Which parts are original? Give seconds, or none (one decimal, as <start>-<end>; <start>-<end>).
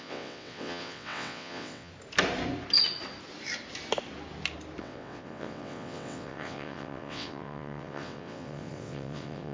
1.9-4.8